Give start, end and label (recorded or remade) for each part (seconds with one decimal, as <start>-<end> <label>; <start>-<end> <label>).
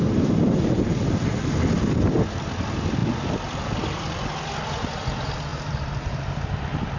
0.0-5.5 recorded; 5.5-6.6 remade; 6.6-7.0 recorded